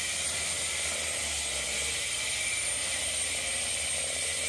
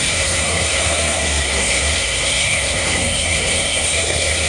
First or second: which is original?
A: first